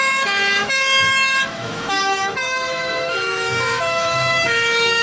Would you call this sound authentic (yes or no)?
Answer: no